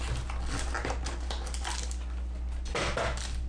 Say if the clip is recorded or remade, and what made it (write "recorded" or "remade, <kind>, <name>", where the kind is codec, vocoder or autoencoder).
recorded